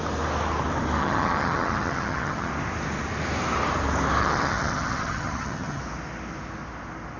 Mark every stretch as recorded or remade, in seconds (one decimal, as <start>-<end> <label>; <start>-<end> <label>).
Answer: 0.0-1.0 recorded; 1.0-2.5 remade; 2.5-4.2 recorded; 4.2-5.8 remade; 5.8-7.2 recorded